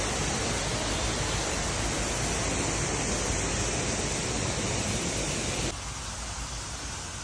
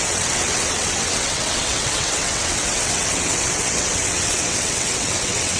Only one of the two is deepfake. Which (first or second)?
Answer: second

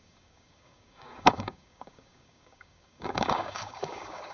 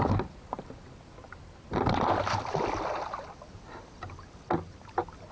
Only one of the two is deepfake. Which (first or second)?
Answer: first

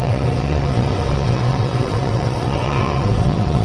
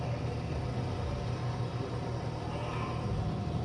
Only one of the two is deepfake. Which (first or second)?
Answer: first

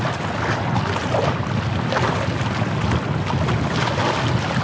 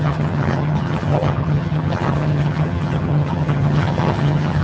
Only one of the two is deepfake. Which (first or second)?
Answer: second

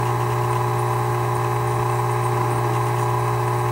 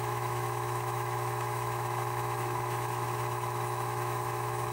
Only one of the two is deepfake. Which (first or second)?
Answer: second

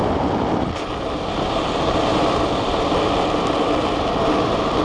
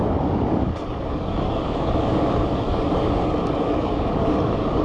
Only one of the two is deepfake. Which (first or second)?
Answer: second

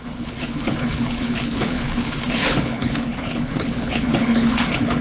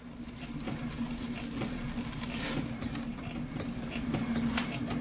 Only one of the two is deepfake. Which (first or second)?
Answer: first